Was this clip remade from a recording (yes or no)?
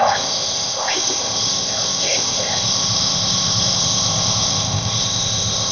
yes